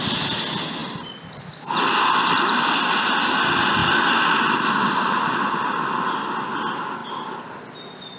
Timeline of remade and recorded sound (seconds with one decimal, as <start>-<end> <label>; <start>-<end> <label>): 0.0-0.8 recorded; 0.8-1.8 remade; 1.8-3.8 recorded; 3.8-4.4 remade; 4.4-8.2 recorded